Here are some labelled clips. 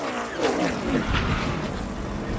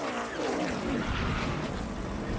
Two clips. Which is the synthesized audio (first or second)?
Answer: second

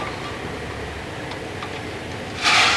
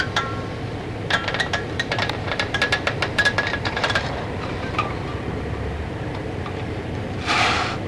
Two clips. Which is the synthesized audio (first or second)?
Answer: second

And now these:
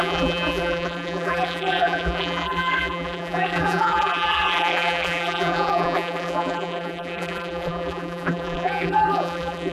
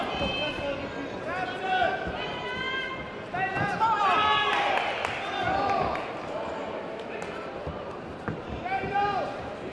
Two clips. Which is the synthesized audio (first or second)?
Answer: first